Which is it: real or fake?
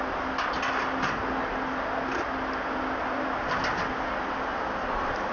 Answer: real